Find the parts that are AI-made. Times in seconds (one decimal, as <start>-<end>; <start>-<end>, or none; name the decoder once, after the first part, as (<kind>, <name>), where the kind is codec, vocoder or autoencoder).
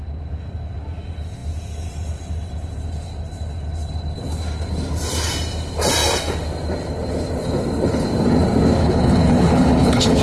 8.8-10.2 (codec, HILCodec)